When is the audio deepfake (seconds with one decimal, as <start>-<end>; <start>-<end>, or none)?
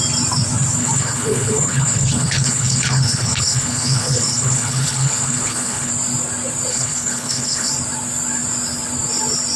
0.8-5.9; 6.7-7.7